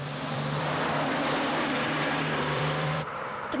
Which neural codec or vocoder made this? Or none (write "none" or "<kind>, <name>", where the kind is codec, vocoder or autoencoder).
vocoder, BigVGAN v2